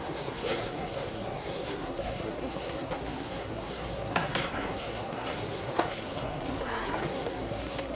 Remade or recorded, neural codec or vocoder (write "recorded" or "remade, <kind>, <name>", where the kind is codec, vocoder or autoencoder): remade, codec, SNAC